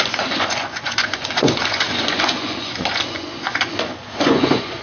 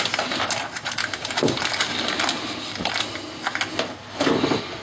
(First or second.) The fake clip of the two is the first